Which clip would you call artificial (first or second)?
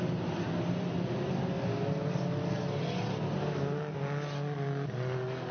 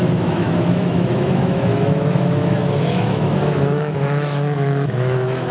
second